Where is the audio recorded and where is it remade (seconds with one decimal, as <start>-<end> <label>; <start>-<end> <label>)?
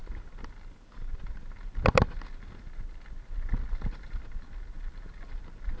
0.0-5.8 recorded